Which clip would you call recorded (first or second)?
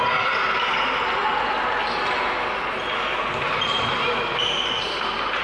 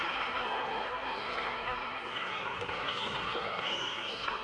first